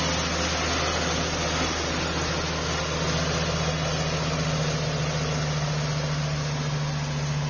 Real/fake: real